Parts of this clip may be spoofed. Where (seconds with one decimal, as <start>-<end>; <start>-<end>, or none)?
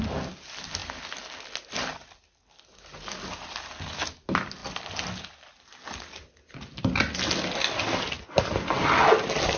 none